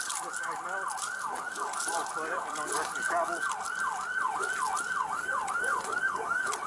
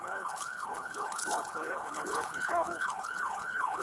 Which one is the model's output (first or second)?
second